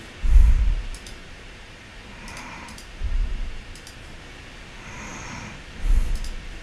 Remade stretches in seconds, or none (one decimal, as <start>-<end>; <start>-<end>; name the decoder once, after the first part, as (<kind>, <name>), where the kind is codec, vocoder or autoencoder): 1.2-4.2 (vocoder, BigVGAN v2)